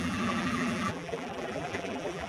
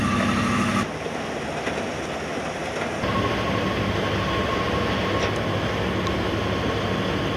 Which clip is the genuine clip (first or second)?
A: second